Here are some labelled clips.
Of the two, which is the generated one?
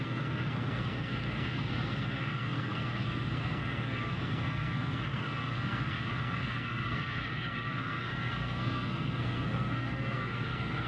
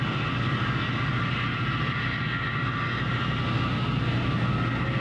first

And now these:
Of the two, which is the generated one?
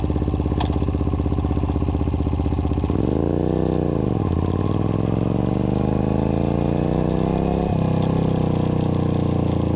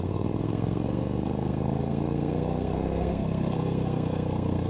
second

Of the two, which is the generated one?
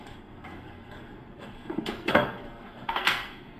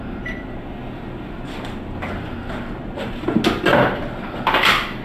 first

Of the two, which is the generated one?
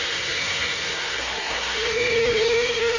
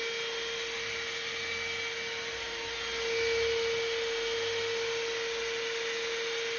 first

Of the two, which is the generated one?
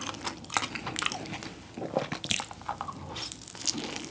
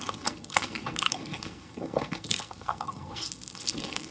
second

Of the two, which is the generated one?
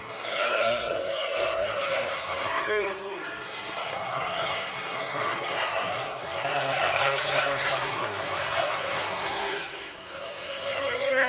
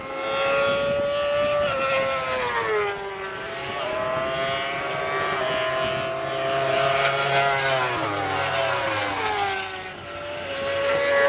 first